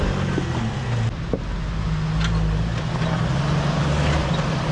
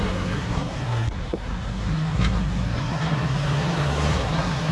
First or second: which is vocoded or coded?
second